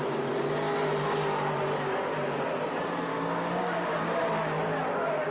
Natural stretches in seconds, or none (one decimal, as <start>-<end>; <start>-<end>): 0.0-3.1; 4.2-5.3